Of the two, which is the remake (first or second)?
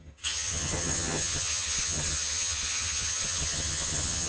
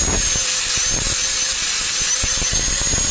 first